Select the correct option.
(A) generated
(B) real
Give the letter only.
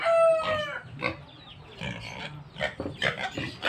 B